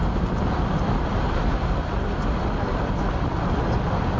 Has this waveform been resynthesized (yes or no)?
no